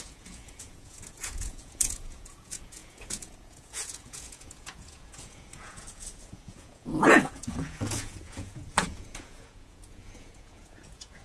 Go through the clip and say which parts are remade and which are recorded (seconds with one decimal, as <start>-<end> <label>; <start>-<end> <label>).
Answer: 0.0-11.2 remade